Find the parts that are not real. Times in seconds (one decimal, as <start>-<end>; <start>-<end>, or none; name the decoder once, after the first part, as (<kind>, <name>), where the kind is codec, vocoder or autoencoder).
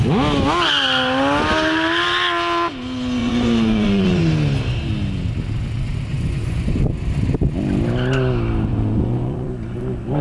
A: 3.2-4.2 (vocoder, Vocos); 6.1-6.9; 8.7-9.5